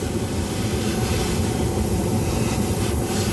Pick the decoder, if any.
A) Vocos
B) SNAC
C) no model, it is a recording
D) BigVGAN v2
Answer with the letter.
D